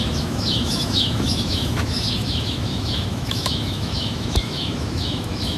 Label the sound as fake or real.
fake